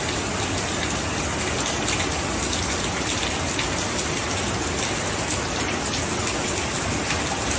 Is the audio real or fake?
real